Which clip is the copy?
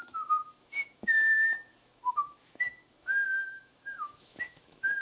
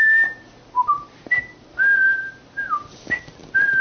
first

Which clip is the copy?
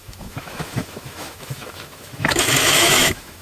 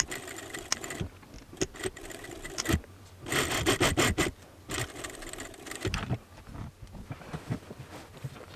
first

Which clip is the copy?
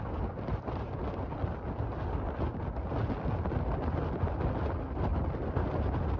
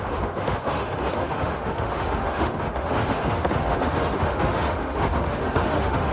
second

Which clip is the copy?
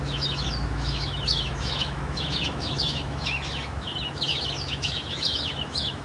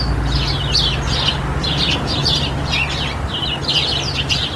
first